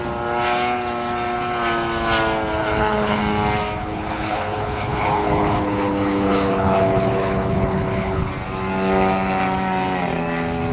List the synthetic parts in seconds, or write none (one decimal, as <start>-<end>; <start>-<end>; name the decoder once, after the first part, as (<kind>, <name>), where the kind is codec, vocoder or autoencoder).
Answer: 2.6-3.2 (codec, HILCodec); 3.8-8.3